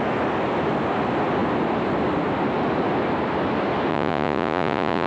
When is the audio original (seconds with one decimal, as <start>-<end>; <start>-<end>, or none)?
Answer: 0.0-3.9